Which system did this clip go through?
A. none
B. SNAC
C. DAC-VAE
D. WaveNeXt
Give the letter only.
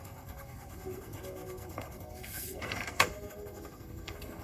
B